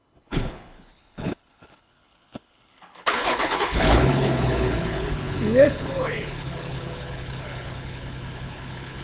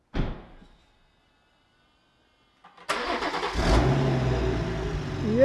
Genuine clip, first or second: second